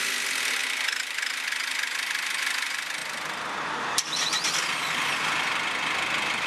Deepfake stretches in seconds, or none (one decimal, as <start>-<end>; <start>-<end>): 0.6-1.4